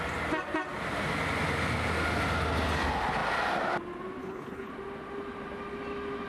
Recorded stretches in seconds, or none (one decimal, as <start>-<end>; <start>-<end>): 0.0-4.2; 4.7-6.3